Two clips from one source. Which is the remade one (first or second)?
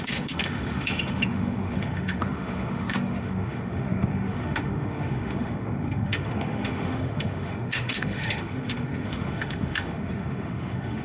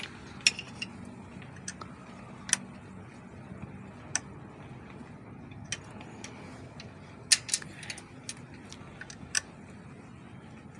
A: first